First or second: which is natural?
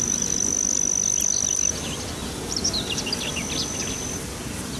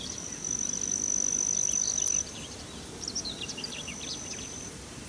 first